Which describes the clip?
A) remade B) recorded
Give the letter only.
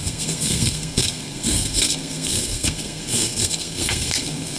A